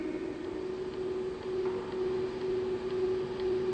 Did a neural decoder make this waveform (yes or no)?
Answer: no